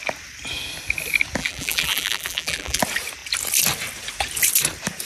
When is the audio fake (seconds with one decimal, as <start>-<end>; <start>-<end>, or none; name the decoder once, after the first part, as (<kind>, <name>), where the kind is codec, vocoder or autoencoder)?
1.4-2.8 (vocoder, BigVGAN v2)